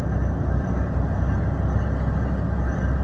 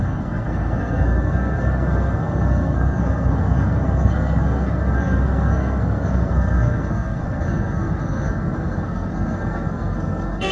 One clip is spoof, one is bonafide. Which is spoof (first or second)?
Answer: second